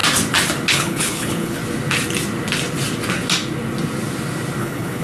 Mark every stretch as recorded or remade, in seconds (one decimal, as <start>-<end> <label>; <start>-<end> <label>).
0.0-0.7 recorded; 0.7-1.6 remade; 1.6-4.6 recorded; 4.6-5.0 remade